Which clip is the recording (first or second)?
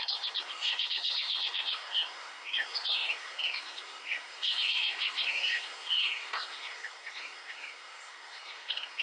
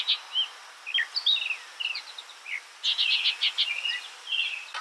second